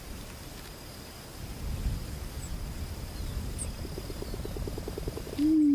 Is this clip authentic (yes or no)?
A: yes